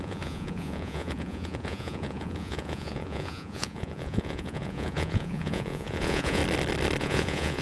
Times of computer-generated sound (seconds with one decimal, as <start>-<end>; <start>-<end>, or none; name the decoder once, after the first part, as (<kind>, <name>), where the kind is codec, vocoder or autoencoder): 0.0-6.4 (vocoder, Vocos); 7.0-7.6